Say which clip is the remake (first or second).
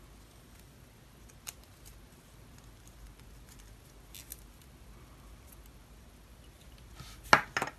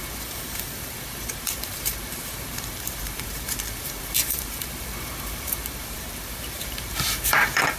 second